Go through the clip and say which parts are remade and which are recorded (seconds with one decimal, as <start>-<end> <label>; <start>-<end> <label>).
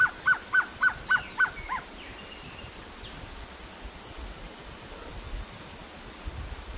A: 0.0-6.8 recorded